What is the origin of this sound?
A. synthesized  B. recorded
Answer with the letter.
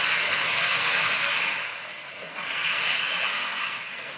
A